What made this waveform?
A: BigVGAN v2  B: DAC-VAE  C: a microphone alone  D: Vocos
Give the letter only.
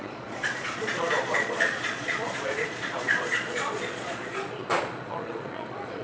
D